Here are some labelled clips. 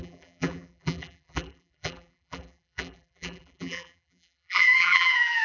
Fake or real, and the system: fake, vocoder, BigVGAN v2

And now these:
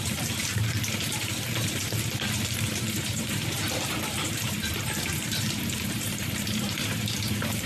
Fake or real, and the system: fake, vocoder, BigVGAN v2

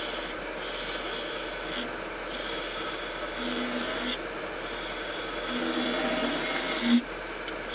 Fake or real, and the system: real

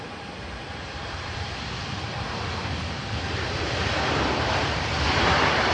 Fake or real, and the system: fake, vocoder, BigVGAN v2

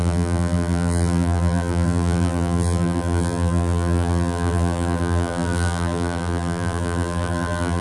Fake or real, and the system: fake, vocoder, BigVGAN v2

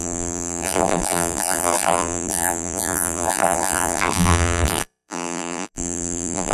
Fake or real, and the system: fake, vocoder, BigVGAN v2